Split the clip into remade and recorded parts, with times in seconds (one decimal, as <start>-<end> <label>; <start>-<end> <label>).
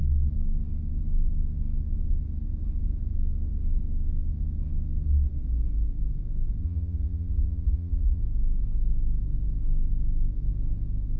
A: 0.0-6.6 recorded; 6.6-8.2 remade; 8.2-11.2 recorded